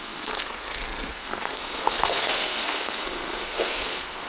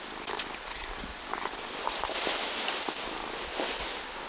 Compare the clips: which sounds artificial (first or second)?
first